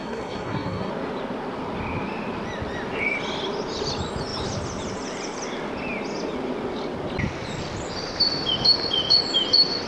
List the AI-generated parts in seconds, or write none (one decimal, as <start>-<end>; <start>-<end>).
0.0-0.9

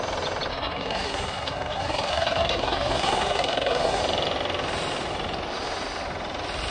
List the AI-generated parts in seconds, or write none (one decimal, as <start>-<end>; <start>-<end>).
0.5-4.0